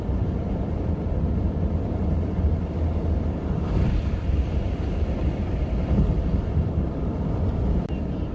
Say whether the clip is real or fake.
fake